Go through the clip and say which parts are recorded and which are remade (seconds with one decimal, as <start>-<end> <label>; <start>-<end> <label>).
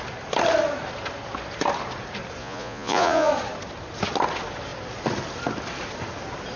0.0-2.4 recorded; 2.4-3.3 remade; 3.3-6.6 recorded